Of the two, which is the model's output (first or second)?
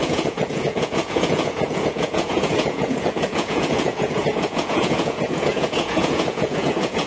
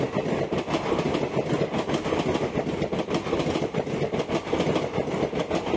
first